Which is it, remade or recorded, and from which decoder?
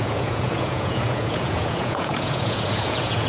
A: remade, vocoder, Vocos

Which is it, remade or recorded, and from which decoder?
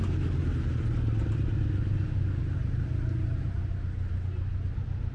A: recorded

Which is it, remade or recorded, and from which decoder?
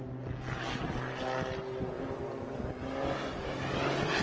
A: recorded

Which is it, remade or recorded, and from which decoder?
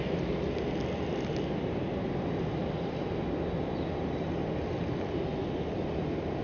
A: recorded